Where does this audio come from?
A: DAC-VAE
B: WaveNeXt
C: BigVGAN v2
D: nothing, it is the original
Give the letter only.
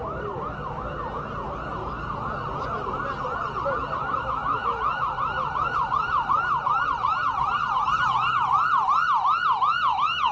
D